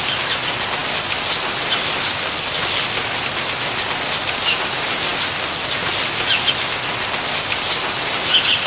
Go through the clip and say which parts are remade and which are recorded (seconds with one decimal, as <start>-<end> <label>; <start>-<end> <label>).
0.0-8.7 recorded